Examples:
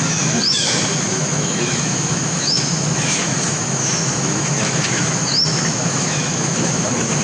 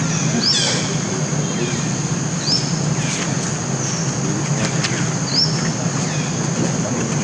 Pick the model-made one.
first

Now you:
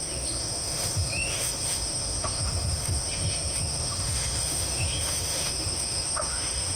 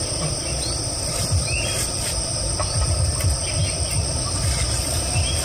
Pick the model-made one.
first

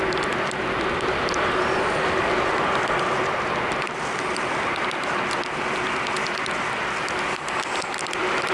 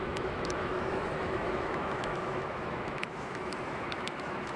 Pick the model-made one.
second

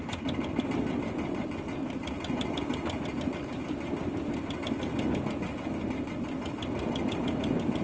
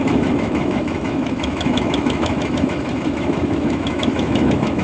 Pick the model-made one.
second